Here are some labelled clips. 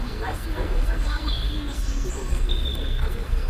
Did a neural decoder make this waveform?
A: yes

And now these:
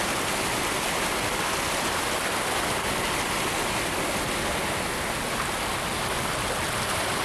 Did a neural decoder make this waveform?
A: no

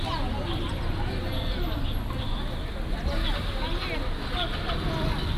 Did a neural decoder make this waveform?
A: no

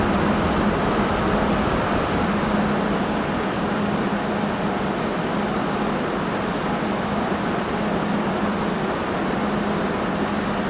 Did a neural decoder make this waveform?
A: no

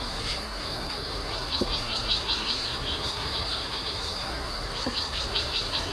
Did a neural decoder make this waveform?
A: yes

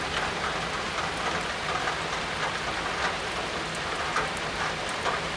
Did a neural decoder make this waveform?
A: no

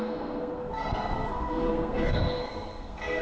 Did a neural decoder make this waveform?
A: yes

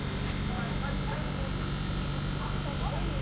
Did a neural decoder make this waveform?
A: no